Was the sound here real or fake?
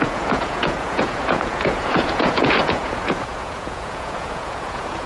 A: fake